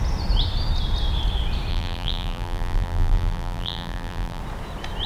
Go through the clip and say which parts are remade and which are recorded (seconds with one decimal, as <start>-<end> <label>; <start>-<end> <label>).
0.0-1.7 recorded; 1.7-4.4 remade; 4.4-5.1 recorded